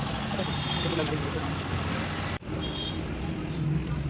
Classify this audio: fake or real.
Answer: real